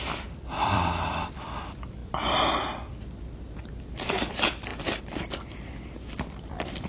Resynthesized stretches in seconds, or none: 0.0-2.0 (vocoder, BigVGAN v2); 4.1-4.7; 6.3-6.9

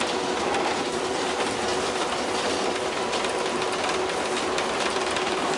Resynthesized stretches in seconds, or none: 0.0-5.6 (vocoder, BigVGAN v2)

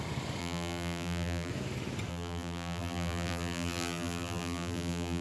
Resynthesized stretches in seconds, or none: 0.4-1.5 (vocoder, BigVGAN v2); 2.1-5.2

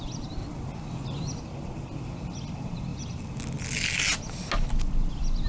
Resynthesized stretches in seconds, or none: 0.0-0.4 (vocoder, BigVGAN v2); 1.4-2.9; 5.1-5.5

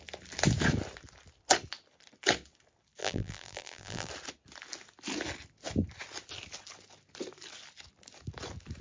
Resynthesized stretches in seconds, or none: 3.0-4.1 (vocoder, BigVGAN v2)

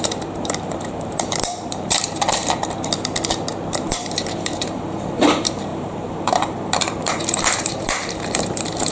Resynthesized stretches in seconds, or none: 0.0-2.4 (vocoder, BigVGAN v2); 3.7-8.9